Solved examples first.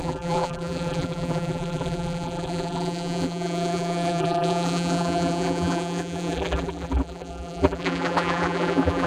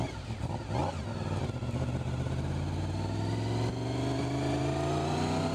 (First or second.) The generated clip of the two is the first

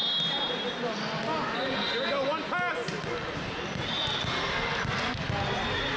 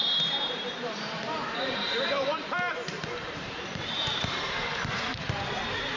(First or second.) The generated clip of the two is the second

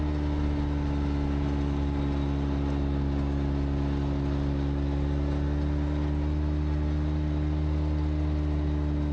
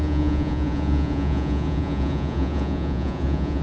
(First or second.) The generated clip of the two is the second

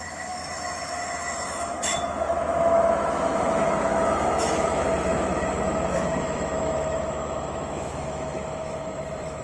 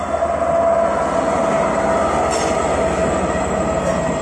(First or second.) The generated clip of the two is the first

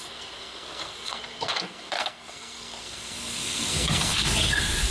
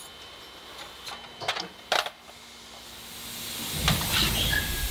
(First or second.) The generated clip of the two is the first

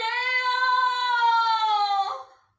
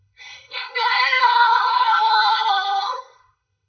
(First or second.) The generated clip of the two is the second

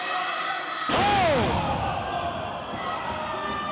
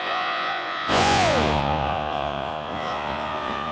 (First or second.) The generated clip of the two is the second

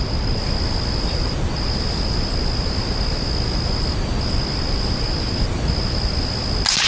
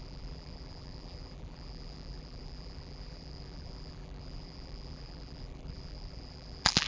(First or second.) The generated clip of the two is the second